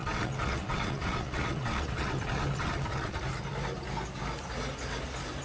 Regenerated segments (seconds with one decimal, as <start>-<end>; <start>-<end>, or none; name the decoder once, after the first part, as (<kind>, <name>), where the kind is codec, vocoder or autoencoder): 0.0-3.2 (vocoder, WaveNeXt)